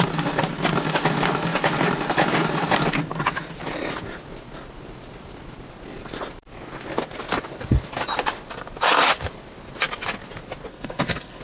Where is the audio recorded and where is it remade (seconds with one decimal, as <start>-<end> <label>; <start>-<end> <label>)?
0.0-10.7 recorded; 10.7-11.4 remade